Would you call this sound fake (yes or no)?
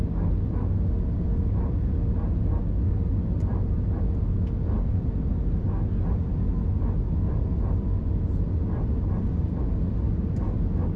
no